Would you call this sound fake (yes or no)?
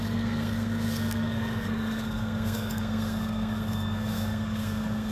yes